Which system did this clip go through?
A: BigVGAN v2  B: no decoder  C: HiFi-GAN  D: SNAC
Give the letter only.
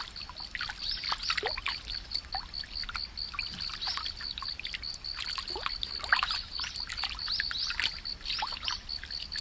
B